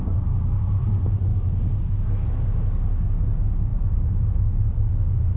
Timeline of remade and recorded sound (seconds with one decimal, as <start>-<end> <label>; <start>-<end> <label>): 0.0-3.7 recorded; 3.7-5.4 remade